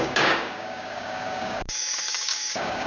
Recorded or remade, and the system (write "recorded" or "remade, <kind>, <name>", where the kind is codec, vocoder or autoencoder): remade, codec, DAC